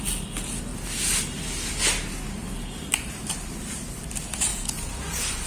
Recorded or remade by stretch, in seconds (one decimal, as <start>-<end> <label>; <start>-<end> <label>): 0.0-4.5 recorded; 4.5-5.5 remade